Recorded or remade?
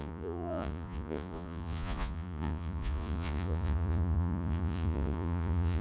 remade